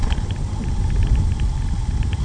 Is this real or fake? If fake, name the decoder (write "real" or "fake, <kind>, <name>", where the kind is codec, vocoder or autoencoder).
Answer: real